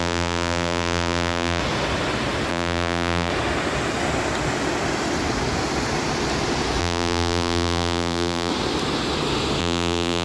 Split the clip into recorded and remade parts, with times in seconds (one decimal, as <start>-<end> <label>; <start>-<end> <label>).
0.0-1.6 remade; 1.6-2.5 recorded; 2.5-3.3 remade; 3.3-6.8 recorded; 6.8-8.5 remade; 8.5-9.6 recorded; 9.6-10.2 remade